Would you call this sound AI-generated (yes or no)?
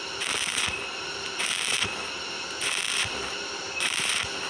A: no